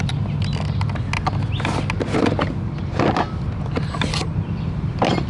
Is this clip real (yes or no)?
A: yes